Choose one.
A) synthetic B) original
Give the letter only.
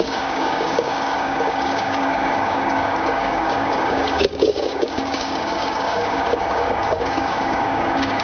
A